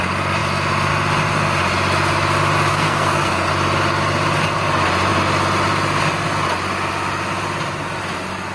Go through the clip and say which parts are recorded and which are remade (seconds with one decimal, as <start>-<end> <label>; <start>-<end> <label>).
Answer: 0.0-2.7 recorded; 2.7-3.5 remade; 3.5-8.5 recorded